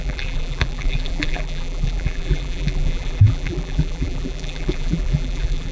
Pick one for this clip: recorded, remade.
remade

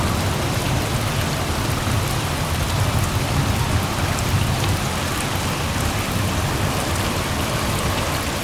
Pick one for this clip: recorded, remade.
remade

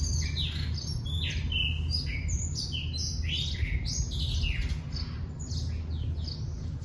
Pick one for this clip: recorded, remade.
recorded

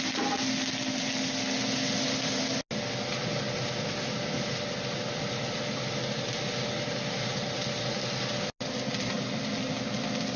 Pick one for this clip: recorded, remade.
recorded